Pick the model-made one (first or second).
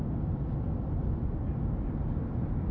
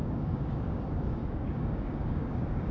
second